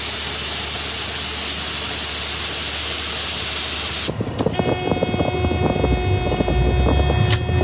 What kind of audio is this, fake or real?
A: real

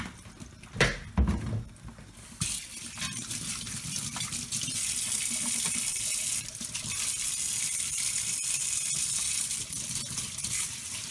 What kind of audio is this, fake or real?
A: real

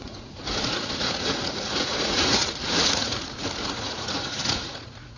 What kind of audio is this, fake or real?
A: fake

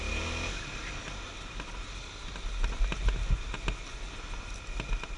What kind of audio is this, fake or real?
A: real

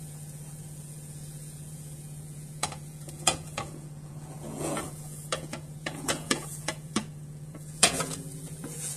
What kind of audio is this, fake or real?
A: fake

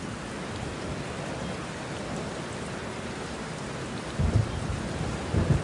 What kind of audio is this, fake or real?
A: real